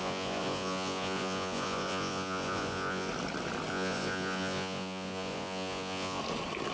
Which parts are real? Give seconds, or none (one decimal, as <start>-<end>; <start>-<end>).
3.1-3.7; 6.2-6.7